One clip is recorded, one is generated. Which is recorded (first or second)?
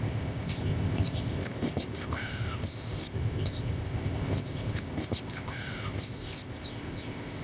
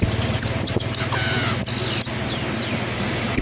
second